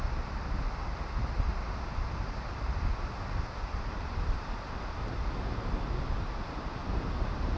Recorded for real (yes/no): yes